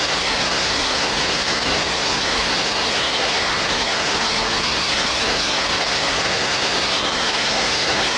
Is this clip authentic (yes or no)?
no